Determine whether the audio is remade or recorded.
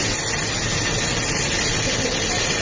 recorded